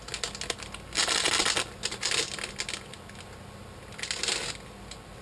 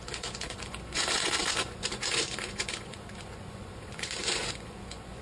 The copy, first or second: second